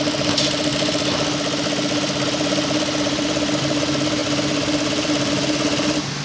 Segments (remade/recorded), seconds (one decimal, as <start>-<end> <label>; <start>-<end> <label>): 0.0-6.2 recorded